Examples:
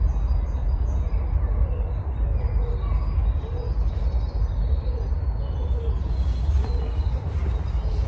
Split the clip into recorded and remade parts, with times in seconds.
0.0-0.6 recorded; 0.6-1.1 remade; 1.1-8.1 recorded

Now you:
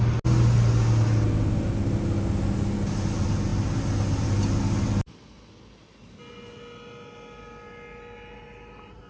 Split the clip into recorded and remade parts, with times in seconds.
0.0-9.1 recorded

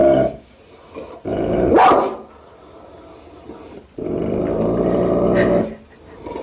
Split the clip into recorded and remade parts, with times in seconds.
0.0-0.6 remade; 0.6-6.4 recorded

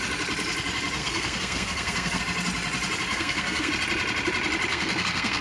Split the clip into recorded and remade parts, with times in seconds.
0.0-1.0 recorded; 1.0-2.2 remade; 2.2-3.1 recorded; 3.1-3.7 remade; 3.7-4.7 recorded; 4.7-5.4 remade